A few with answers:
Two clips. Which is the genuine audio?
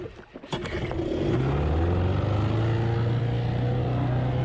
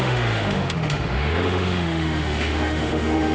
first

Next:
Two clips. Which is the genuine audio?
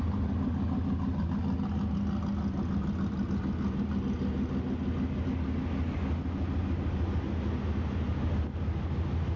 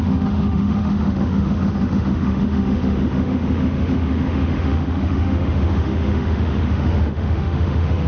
first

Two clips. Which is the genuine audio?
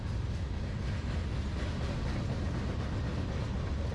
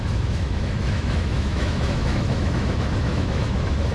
first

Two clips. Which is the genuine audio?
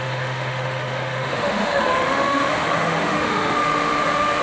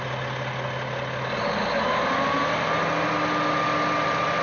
second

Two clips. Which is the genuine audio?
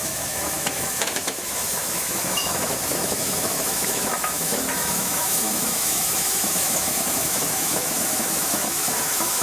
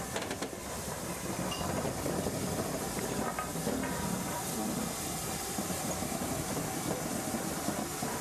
second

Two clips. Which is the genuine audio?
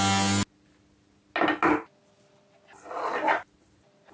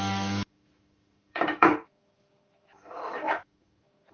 first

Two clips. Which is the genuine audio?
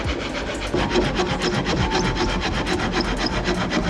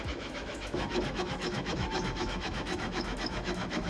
first